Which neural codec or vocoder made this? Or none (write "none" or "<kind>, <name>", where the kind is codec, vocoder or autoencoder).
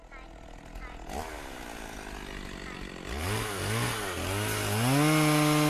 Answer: none